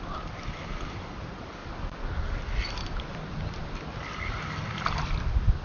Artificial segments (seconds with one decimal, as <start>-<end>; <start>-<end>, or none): 0.0-1.6; 5.0-5.6